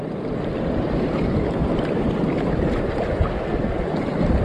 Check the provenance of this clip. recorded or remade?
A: recorded